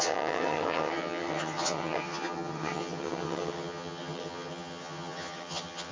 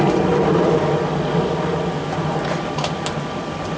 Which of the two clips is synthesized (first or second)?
first